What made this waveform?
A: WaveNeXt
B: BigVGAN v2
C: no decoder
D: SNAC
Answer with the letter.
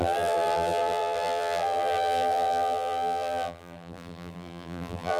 B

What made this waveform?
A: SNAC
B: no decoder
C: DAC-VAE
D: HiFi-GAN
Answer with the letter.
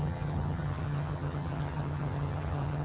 D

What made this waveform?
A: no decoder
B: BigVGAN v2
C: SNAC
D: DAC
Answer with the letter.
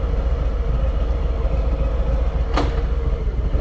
A